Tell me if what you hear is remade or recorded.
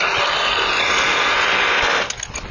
recorded